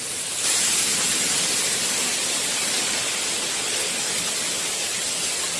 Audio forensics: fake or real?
real